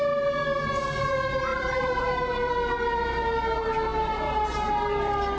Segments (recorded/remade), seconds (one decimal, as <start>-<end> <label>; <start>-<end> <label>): 0.0-1.5 recorded; 1.5-2.0 remade; 2.0-5.4 recorded